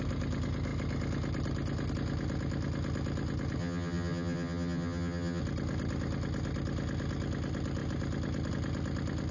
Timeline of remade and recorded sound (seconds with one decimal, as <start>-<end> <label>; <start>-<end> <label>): 0.0-3.6 recorded; 3.6-5.4 remade; 5.4-9.3 recorded